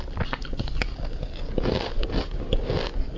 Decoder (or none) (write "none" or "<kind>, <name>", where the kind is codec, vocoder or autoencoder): none